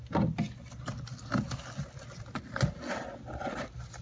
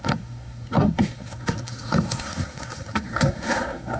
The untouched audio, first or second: first